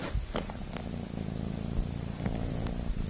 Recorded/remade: recorded